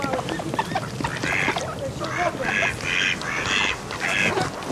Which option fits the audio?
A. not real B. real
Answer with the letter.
B